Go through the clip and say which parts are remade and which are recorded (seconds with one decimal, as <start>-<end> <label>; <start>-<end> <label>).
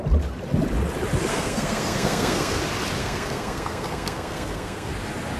0.0-1.3 recorded; 1.3-2.6 remade; 2.6-3.0 recorded; 3.0-4.9 remade; 4.9-5.4 recorded